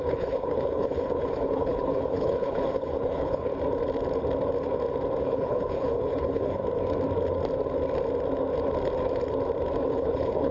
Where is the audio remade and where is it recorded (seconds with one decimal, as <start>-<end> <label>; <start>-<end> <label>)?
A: 0.0-3.5 remade; 3.5-5.2 recorded; 5.2-6.6 remade; 6.6-9.9 recorded; 9.9-10.5 remade

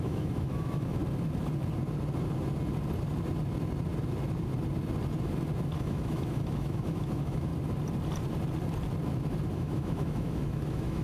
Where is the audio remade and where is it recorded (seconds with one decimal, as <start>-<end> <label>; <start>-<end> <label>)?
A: 0.0-1.0 remade; 1.0-5.8 recorded; 5.8-7.5 remade; 7.5-9.5 recorded; 9.5-11.0 remade

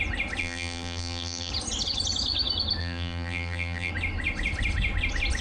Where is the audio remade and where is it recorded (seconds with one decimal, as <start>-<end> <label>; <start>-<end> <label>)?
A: 0.0-0.4 recorded; 0.4-1.5 remade; 1.5-2.8 recorded; 2.8-3.9 remade; 3.9-5.4 recorded

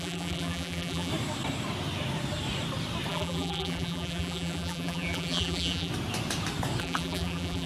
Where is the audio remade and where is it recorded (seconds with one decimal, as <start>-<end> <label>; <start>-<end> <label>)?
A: 0.0-1.1 remade; 1.1-3.1 recorded; 3.1-5.9 remade; 5.9-6.8 recorded; 6.8-7.7 remade

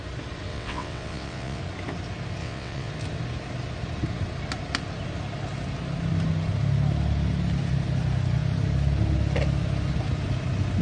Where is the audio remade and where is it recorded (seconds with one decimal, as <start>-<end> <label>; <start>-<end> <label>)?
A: 0.0-0.5 recorded; 0.5-1.6 remade; 1.6-2.4 recorded; 2.4-2.9 remade; 2.9-10.8 recorded

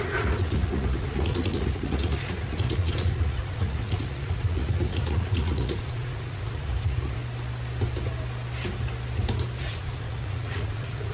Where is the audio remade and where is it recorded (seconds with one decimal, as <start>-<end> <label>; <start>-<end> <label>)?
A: 0.0-7.2 remade; 7.2-9.6 recorded; 9.6-11.1 remade

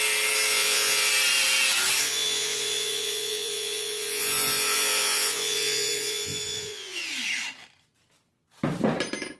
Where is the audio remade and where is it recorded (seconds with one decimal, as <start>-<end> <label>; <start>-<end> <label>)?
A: 0.0-0.5 recorded; 0.5-1.1 remade; 1.1-2.0 recorded; 2.0-7.0 remade; 7.0-9.4 recorded